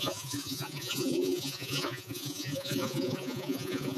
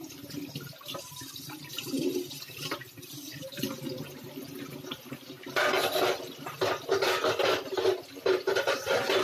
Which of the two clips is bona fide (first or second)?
second